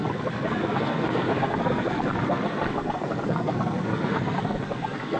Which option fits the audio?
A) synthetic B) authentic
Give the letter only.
A